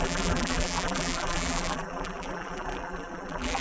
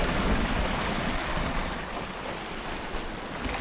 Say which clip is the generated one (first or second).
first